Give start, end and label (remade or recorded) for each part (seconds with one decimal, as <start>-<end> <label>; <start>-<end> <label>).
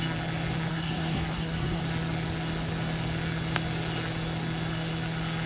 0.0-0.7 recorded; 0.7-1.8 remade; 1.8-5.5 recorded